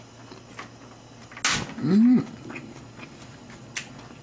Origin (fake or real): real